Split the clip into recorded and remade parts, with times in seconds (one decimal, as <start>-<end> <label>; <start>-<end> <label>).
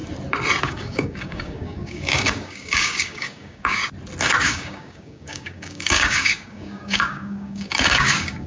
0.0-0.6 recorded; 0.6-3.8 remade; 3.8-4.4 recorded; 4.4-8.5 remade